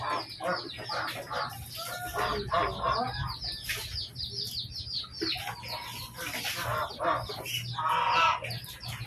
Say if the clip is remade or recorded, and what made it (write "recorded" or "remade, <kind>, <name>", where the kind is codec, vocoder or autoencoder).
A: recorded